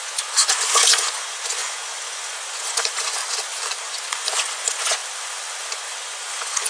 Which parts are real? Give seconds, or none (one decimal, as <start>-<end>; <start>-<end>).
3.2-3.8; 5.0-5.7